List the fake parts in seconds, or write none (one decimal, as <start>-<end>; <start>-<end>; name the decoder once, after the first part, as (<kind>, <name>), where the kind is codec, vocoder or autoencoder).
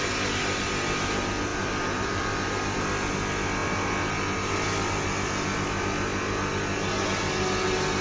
1.5-2.8 (vocoder, BigVGAN v2)